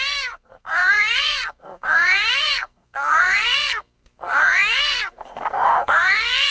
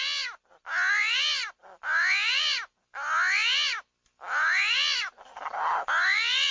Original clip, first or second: second